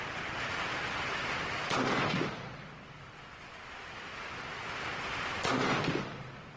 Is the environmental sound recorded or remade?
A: recorded